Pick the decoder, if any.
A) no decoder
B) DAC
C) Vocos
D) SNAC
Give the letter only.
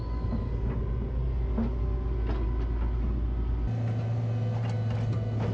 A